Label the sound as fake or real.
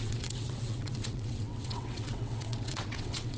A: fake